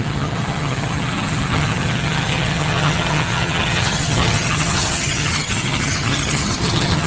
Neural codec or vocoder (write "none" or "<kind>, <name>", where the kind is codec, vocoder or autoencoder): vocoder, HiFi-GAN